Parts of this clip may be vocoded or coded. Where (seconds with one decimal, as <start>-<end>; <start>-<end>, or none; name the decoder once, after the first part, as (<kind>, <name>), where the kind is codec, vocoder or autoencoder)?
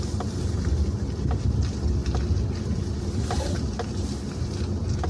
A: none